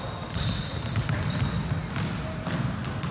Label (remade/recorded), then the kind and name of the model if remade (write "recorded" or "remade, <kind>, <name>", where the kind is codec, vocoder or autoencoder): recorded